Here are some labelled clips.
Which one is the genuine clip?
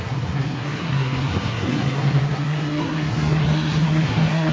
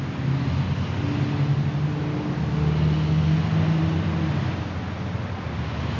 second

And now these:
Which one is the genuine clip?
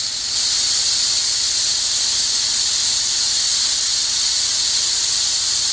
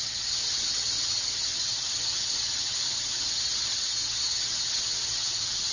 first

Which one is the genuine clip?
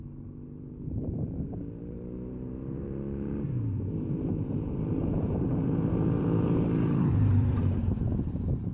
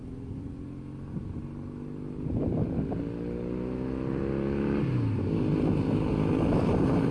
second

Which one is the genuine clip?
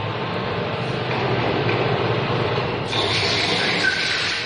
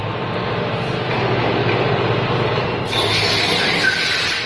second